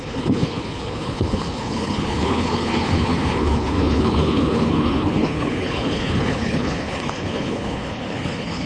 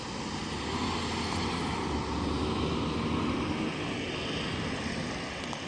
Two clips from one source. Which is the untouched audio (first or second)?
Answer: second